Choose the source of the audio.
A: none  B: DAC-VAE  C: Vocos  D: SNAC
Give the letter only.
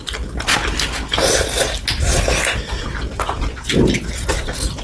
A